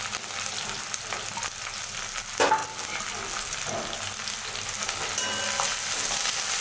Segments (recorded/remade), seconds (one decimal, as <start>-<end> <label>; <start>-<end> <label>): 0.0-6.6 recorded